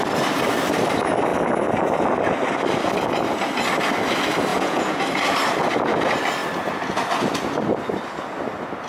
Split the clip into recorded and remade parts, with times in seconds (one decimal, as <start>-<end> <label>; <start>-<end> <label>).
0.0-4.5 recorded; 4.5-5.0 remade; 5.0-8.9 recorded